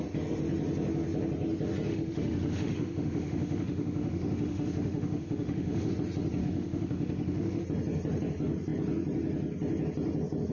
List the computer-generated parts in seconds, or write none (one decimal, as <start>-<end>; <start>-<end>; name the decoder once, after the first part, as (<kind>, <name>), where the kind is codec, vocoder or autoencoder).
1.9-5.9 (autoencoder, DAC-VAE); 6.4-7.6